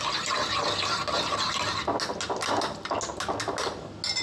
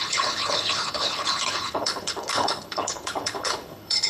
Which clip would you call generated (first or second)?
second